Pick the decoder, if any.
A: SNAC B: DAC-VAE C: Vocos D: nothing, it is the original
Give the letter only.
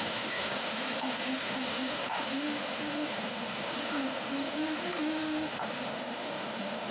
B